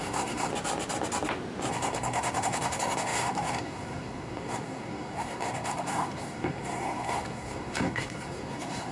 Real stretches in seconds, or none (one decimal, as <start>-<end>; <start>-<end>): 0.5-1.7